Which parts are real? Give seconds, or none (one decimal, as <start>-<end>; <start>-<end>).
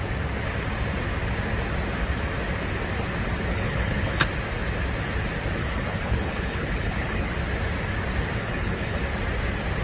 0.0-3.5; 4.2-5.6; 7.3-8.4; 9.0-9.8